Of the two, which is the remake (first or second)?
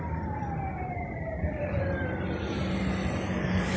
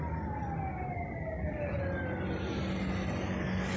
first